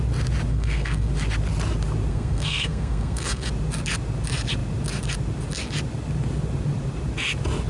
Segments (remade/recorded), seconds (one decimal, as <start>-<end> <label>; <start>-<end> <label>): 0.0-0.5 recorded; 0.5-1.1 remade; 1.1-2.1 recorded; 2.1-3.5 remade; 3.5-7.7 recorded

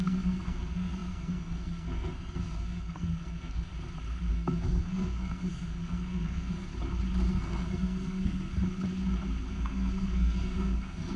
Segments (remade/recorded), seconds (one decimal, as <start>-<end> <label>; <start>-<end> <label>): 0.0-3.7 remade; 3.7-4.3 recorded; 4.3-6.7 remade; 6.7-7.3 recorded; 7.3-8.5 remade; 8.5-9.5 recorded; 9.5-11.2 remade

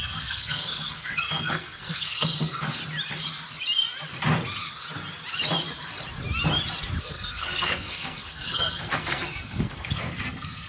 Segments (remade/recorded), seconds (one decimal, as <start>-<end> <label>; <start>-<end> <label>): 0.0-2.8 remade; 2.8-7.0 recorded; 7.0-10.7 remade

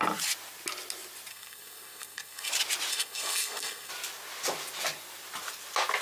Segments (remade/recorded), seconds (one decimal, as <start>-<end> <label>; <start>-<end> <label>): 0.0-1.3 recorded; 1.3-2.5 remade; 2.5-2.9 recorded; 2.9-3.9 remade; 3.9-6.0 recorded

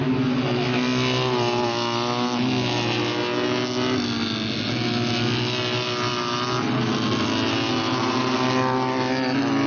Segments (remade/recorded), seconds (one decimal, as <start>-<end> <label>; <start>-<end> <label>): 0.0-9.7 recorded

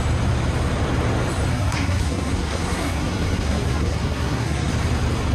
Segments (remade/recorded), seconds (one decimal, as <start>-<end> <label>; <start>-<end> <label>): 0.0-1.5 recorded; 1.5-4.7 remade; 4.7-5.3 recorded

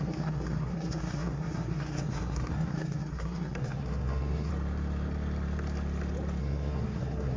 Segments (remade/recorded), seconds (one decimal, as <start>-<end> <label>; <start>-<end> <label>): 0.0-4.5 remade; 4.5-6.4 recorded; 6.4-7.4 remade